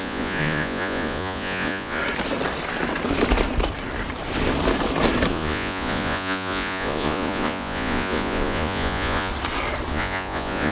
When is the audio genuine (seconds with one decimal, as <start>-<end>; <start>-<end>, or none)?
2.0-5.3; 9.3-9.9